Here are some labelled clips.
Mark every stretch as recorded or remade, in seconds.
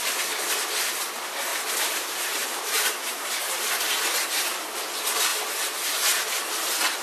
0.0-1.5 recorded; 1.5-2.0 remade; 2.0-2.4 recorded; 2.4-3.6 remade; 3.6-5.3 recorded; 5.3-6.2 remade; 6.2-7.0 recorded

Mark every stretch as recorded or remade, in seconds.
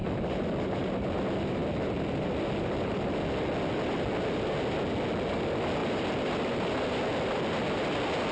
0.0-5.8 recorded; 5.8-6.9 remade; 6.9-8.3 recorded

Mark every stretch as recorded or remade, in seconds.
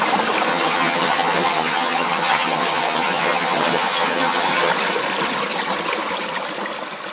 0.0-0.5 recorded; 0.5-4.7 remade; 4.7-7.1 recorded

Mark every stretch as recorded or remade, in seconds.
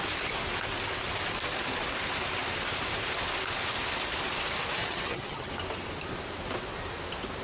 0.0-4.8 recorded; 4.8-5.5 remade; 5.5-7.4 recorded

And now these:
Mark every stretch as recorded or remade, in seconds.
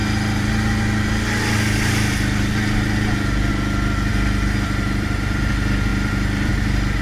0.0-4.1 recorded; 4.1-5.5 remade; 5.5-5.9 recorded; 5.9-6.5 remade; 6.5-7.0 recorded